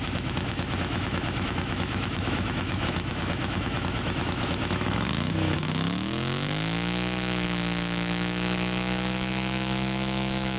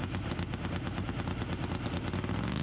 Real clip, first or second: second